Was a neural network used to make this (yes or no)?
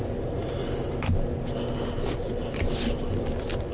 no